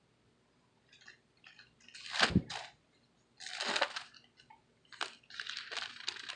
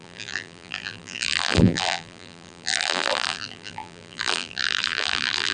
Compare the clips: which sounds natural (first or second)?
first